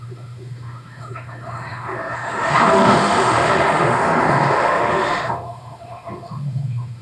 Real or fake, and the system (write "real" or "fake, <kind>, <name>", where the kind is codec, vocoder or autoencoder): fake, autoencoder, DAC-VAE